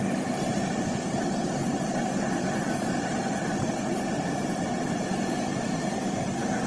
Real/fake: real